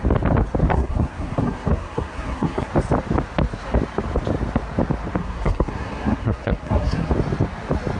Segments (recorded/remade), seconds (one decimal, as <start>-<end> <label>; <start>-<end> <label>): 0.0-0.7 recorded; 0.7-2.7 remade; 2.7-5.2 recorded; 5.2-7.1 remade; 7.1-8.0 recorded